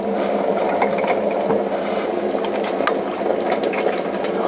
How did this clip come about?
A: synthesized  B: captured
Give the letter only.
B